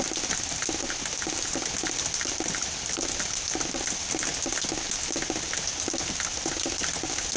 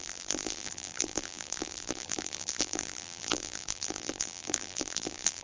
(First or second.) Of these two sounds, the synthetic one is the second